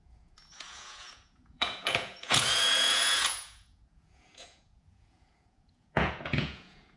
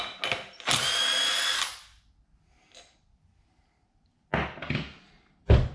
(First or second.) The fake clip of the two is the first